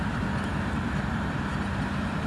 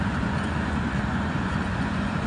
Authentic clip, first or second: first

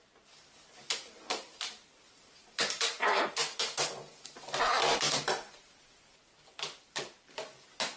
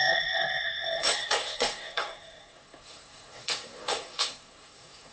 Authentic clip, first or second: first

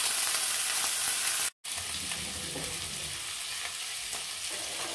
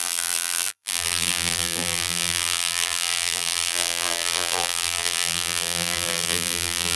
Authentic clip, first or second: first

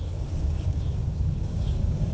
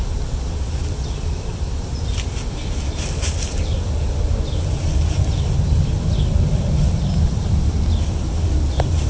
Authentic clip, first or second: second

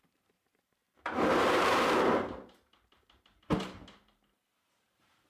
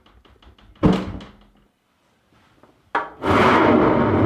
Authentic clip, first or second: second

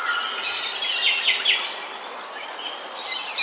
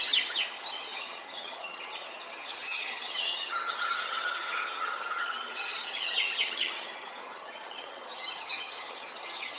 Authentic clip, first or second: first